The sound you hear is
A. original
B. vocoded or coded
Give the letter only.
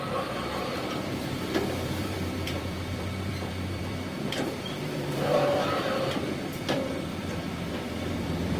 B